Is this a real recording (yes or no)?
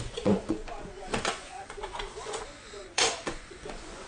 no